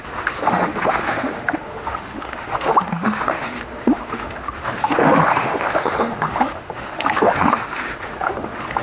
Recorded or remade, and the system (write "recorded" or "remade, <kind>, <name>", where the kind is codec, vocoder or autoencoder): remade, autoencoder, DAC-VAE